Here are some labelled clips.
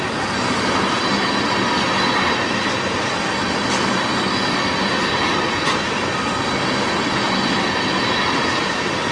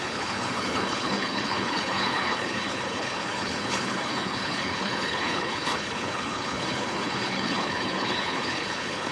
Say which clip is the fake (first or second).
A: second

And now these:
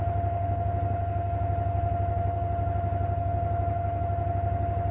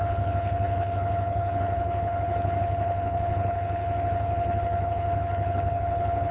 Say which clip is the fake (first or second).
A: second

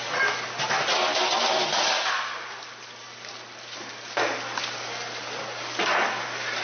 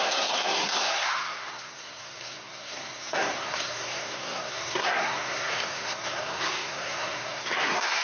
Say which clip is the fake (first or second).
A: second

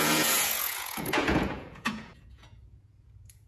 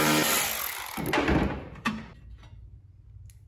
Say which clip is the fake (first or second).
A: first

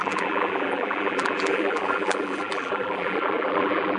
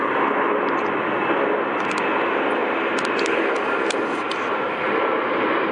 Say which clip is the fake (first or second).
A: first